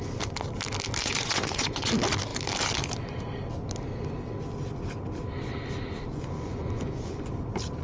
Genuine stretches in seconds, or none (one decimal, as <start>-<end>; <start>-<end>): 0.0-1.0; 1.9-6.1; 7.3-7.8